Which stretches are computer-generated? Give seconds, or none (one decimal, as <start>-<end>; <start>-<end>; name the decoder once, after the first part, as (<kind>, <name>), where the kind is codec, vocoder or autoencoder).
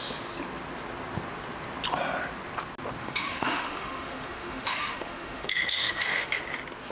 3.0-6.4 (autoencoder, DAC-VAE)